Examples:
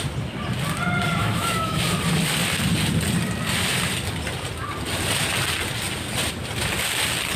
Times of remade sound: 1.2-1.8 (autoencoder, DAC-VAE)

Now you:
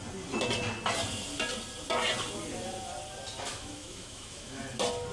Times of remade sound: 3.5-4.6 (autoencoder, DAC-VAE)

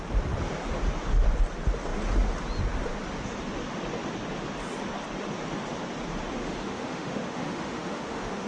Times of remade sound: 6.4-8.5 (autoencoder, DAC-VAE)

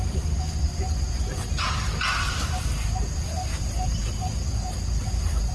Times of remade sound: none

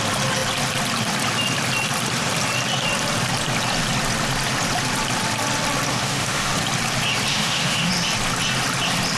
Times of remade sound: 5.9-6.5 (autoencoder, DAC-VAE); 7.3-7.9